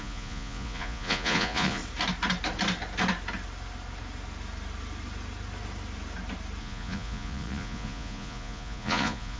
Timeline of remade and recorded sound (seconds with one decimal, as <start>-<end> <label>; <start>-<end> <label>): 0.0-1.8 remade; 1.8-6.6 recorded; 6.6-9.4 remade